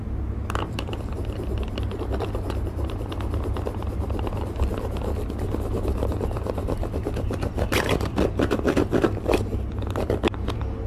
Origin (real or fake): fake